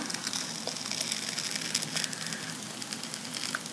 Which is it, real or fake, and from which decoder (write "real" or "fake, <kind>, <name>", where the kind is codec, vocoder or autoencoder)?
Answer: real